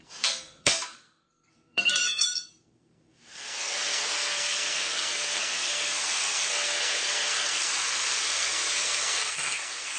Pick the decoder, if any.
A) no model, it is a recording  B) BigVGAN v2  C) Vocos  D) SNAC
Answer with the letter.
D